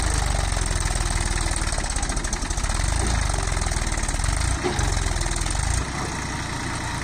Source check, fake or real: real